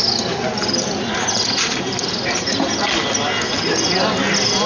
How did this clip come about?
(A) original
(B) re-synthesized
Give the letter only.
A